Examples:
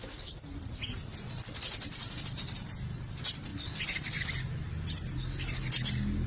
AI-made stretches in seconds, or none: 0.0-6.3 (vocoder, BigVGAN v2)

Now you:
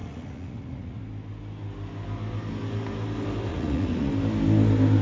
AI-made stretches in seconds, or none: 0.0-1.0 (vocoder, Vocos); 3.5-4.1

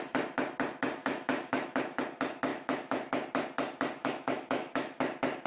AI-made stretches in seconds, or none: 1.0-2.0 (autoencoder, DAC-VAE); 2.5-3.1; 4.0-5.0

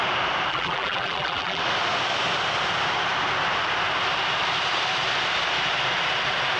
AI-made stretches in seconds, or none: 0.5-1.6 (vocoder, BigVGAN v2)

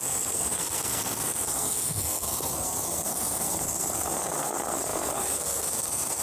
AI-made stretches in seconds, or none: 0.0-6.2 (codec, SNAC)

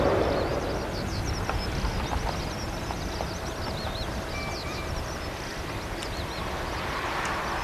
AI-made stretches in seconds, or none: none